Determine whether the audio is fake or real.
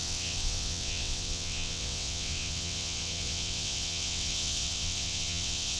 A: fake